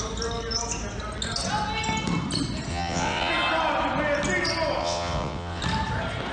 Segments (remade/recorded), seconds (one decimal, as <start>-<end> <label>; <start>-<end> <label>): 0.0-2.7 recorded; 2.7-3.3 remade; 3.3-4.8 recorded; 4.8-5.6 remade; 5.6-6.3 recorded